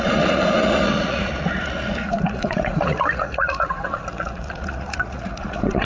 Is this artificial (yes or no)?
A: yes